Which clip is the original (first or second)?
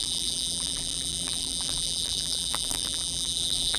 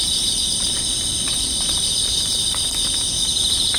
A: second